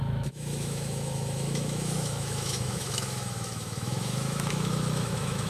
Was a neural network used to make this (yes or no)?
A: yes